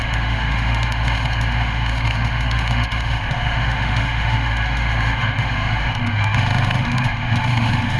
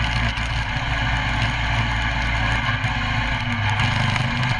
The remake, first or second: first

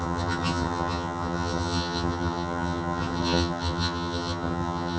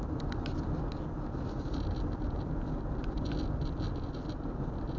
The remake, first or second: first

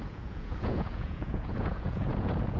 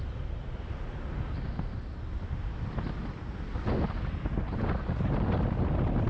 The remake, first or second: first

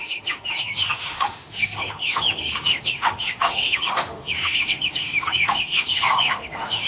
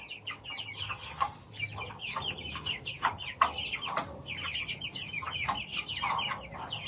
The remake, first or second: first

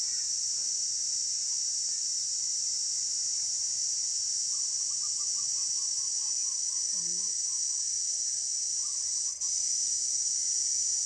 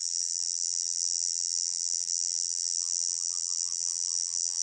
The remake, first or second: second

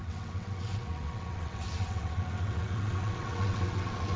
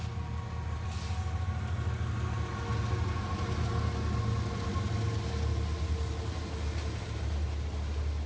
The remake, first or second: first